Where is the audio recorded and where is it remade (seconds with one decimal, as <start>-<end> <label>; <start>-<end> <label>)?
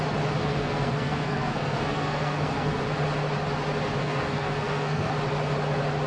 0.0-0.4 recorded; 0.4-2.8 remade; 2.8-4.0 recorded; 4.0-5.1 remade; 5.1-6.1 recorded